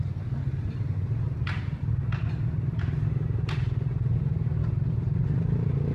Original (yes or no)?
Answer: yes